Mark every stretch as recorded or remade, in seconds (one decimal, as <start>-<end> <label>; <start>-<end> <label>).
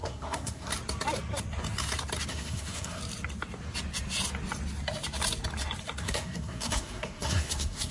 0.0-0.7 remade; 0.7-2.3 recorded; 2.3-3.0 remade; 3.0-6.0 recorded; 6.0-7.9 remade